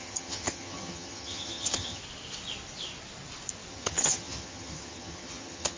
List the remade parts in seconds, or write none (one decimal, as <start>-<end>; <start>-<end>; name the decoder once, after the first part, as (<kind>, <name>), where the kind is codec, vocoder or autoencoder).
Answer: 0.0-2.0 (vocoder, HiFi-GAN); 3.7-5.8